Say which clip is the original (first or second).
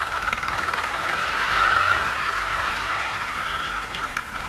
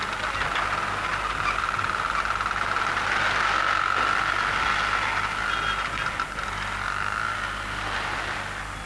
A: second